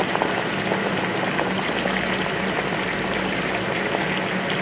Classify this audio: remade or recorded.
recorded